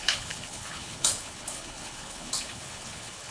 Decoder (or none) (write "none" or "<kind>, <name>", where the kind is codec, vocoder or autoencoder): codec, HILCodec